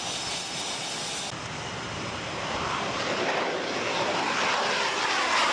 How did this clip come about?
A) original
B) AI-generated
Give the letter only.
A